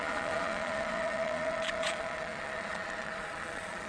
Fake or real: fake